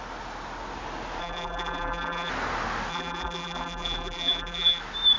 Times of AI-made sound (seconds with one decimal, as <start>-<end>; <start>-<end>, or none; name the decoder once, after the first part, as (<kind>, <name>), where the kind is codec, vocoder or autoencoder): 1.2-2.3 (vocoder, BigVGAN v2); 2.9-4.8

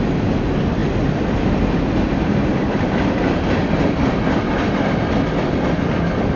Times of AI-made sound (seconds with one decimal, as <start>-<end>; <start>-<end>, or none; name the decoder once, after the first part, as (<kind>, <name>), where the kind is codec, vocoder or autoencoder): 2.5-6.4 (vocoder, BigVGAN v2)

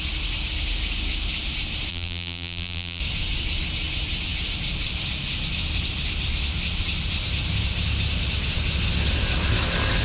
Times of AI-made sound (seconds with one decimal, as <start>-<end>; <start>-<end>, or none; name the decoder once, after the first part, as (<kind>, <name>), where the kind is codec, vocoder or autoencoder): 1.9-3.0 (vocoder, BigVGAN v2)